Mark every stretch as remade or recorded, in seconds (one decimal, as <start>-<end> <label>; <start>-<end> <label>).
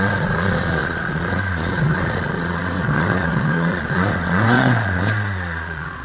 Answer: 0.0-6.0 remade